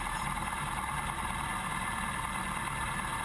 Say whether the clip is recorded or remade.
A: recorded